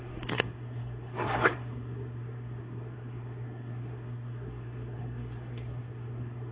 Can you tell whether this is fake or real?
fake